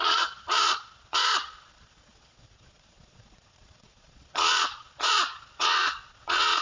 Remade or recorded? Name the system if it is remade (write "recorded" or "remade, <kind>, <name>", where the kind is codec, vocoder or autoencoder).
remade, vocoder, Vocos